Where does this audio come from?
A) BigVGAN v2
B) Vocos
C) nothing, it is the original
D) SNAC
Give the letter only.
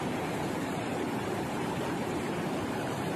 A